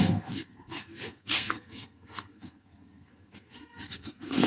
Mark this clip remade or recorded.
remade